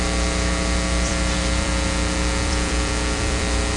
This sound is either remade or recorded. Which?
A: remade